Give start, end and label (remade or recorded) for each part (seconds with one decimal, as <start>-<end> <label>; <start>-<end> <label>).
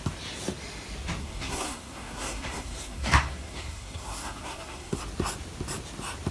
0.0-1.2 recorded; 1.2-5.0 remade; 5.0-6.3 recorded